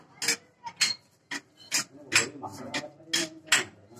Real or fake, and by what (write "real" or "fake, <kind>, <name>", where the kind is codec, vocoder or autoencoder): real